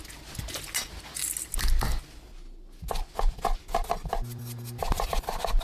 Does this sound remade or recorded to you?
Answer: recorded